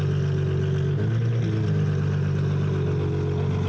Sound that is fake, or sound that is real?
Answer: real